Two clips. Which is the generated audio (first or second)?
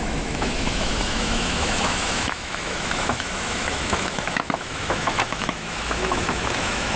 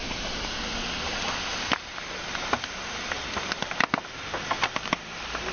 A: first